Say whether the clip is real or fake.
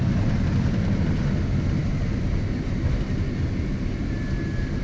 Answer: real